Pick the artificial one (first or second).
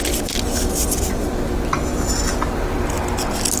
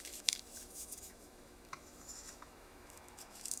second